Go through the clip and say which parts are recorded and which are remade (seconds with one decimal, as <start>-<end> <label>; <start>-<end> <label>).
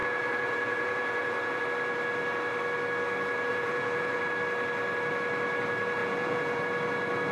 0.0-1.6 remade; 1.6-3.5 recorded; 3.5-4.2 remade; 4.2-6.0 recorded; 6.0-6.6 remade; 6.6-7.3 recorded